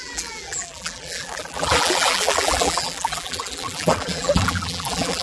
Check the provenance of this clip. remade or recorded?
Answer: remade